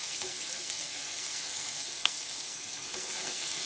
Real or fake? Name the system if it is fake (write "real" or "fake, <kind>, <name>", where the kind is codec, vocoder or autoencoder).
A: fake, codec, SNAC